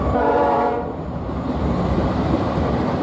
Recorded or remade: remade